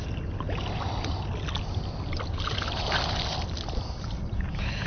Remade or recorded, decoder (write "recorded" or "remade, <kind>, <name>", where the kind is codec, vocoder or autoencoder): recorded